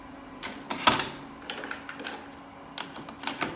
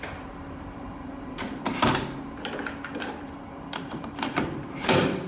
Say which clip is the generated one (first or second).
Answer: second